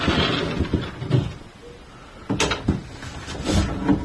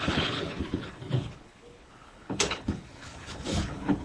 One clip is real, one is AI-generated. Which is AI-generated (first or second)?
second